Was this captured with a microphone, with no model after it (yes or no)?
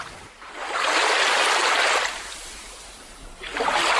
yes